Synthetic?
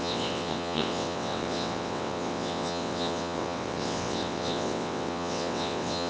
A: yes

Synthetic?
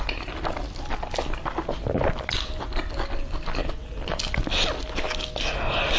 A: no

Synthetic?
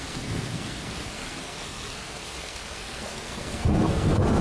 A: yes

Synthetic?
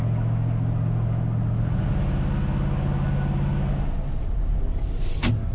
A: no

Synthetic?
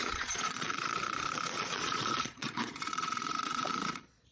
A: yes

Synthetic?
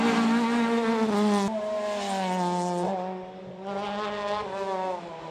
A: no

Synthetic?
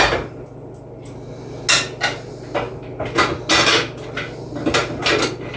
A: no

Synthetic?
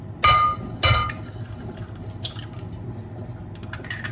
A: no